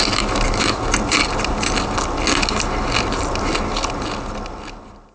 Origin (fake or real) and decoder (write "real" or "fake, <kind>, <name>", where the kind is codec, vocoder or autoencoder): real